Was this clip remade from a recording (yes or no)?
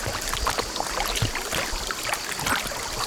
no